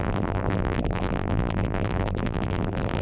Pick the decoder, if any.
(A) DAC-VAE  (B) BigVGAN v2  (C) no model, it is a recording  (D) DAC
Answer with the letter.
B